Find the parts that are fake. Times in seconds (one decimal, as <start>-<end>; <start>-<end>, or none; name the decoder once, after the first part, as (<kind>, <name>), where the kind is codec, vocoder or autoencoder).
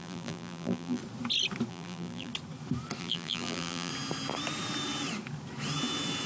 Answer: 0.0-1.0 (vocoder, BigVGAN v2); 1.7-2.3; 3.0-3.9